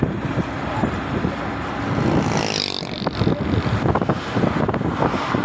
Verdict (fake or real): real